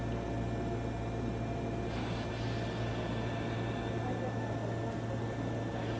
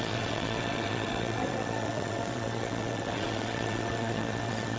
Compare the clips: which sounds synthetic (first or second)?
second